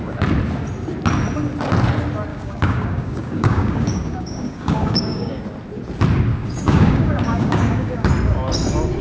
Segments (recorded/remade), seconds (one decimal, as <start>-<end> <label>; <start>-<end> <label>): 0.0-2.3 recorded; 2.3-5.4 remade; 5.4-6.3 recorded; 6.3-8.1 remade; 8.1-9.0 recorded